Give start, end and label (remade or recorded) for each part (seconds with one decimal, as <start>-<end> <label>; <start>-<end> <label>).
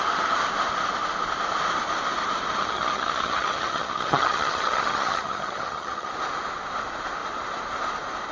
0.0-2.6 recorded; 2.6-6.1 remade; 6.1-8.3 recorded